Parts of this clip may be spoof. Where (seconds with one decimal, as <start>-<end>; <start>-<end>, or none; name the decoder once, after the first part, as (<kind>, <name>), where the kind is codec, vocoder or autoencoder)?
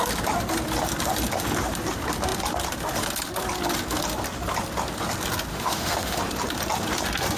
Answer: 5.5-6.2 (autoencoder, DAC-VAE)